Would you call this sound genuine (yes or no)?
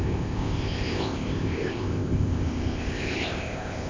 no